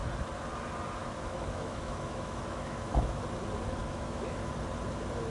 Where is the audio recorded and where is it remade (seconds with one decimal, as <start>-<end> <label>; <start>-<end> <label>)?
0.0-1.0 recorded; 1.0-3.2 remade; 3.2-3.8 recorded; 3.8-4.5 remade; 4.5-5.3 recorded